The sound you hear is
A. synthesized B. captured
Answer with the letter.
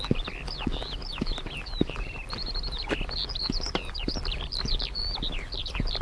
A